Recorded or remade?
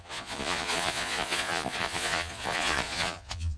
remade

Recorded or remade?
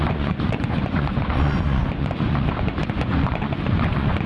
remade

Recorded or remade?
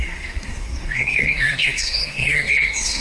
remade